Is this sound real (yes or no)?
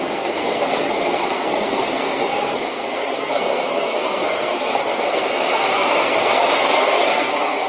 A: no